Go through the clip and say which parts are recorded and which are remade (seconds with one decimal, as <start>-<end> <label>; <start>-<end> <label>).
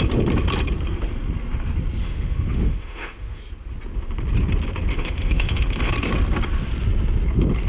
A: 0.0-2.0 recorded; 2.0-3.4 remade; 3.4-4.9 recorded; 4.9-5.9 remade; 5.9-7.7 recorded